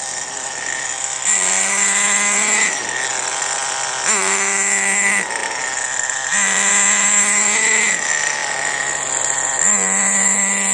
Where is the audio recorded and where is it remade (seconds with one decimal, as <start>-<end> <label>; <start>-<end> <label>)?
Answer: 0.0-10.7 recorded

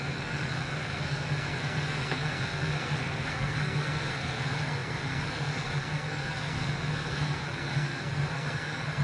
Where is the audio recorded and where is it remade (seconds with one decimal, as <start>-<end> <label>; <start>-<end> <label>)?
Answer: 0.0-9.0 remade

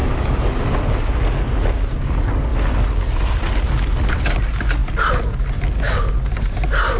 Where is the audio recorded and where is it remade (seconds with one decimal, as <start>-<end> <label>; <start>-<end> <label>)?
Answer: 0.0-7.0 recorded

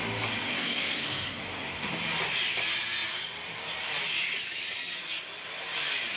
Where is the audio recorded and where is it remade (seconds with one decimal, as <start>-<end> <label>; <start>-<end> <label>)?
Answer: 0.0-0.5 recorded; 0.5-1.9 remade; 1.9-6.2 recorded

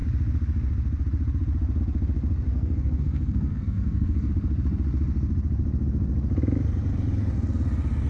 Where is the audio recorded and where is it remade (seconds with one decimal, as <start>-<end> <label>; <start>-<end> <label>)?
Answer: 0.0-2.5 recorded; 2.5-4.3 remade; 4.3-8.1 recorded

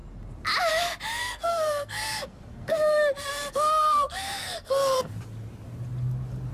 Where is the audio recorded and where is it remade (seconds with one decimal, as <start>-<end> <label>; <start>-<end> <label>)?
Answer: 0.0-1.2 recorded; 1.2-5.1 remade; 5.1-6.5 recorded

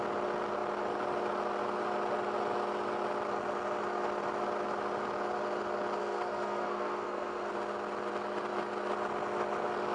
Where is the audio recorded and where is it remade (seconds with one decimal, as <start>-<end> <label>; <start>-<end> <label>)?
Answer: 0.0-6.0 recorded; 6.0-7.5 remade; 7.5-9.9 recorded

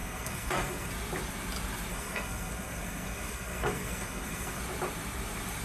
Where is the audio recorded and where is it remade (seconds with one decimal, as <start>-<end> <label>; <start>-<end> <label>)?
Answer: 0.0-0.9 remade; 0.9-1.9 recorded; 1.9-4.6 remade; 4.6-5.6 recorded